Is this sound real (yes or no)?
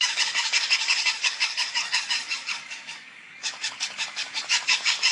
no